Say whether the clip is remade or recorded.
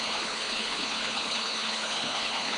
remade